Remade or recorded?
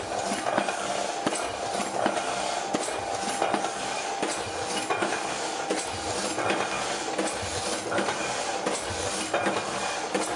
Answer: recorded